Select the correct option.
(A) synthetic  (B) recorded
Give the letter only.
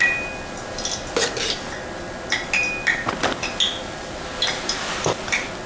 B